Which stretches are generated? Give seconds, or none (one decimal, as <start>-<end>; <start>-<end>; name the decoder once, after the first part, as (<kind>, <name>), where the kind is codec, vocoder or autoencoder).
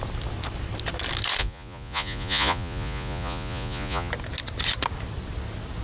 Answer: 1.4-4.1 (vocoder, Vocos)